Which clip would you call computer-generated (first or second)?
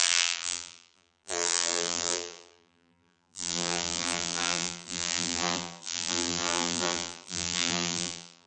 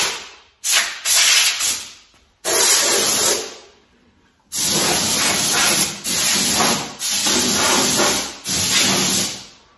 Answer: first